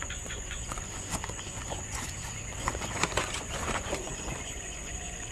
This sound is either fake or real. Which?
fake